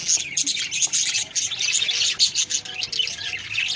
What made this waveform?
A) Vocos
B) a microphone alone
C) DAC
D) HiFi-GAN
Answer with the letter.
B